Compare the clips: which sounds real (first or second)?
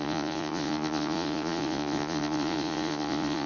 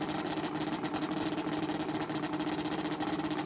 second